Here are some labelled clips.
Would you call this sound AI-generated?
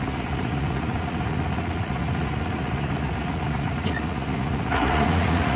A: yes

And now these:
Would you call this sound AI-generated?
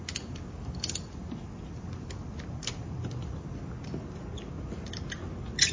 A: no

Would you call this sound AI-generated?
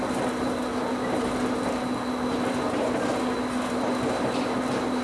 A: no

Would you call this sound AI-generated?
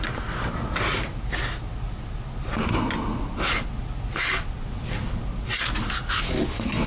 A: no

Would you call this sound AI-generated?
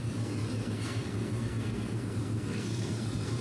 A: yes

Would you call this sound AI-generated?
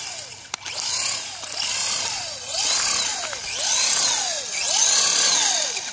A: no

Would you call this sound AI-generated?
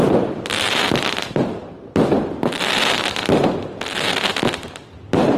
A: no